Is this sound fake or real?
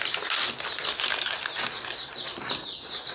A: real